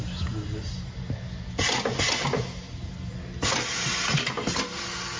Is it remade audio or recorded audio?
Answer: recorded